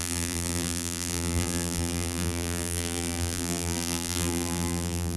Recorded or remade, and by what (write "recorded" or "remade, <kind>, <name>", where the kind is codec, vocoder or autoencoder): remade, vocoder, BigVGAN v2